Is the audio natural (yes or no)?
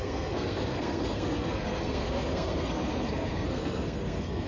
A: no